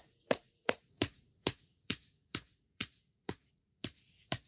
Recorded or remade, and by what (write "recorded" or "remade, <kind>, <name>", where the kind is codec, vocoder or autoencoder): remade, vocoder, Vocos